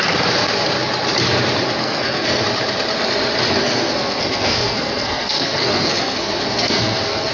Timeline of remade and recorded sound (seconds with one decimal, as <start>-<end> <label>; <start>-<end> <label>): 0.0-1.8 recorded; 1.8-2.4 remade; 2.4-3.6 recorded; 3.6-7.3 remade